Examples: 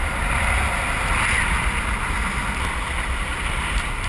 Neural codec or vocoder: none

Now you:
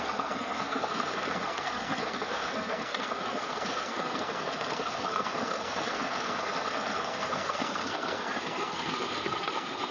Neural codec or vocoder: codec, SNAC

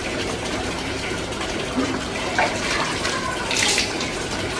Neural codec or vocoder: vocoder, BigVGAN v2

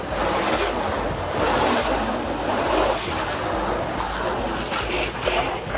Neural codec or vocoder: none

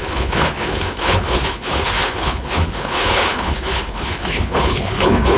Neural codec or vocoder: codec, HILCodec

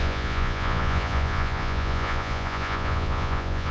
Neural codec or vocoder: vocoder, Vocos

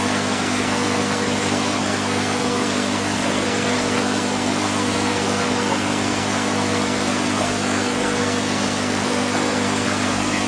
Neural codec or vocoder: codec, SNAC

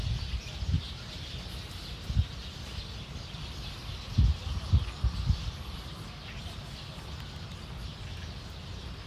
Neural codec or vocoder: none